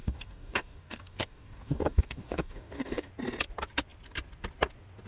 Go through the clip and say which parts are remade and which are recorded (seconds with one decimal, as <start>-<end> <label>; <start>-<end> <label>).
0.0-3.1 remade; 3.1-5.1 recorded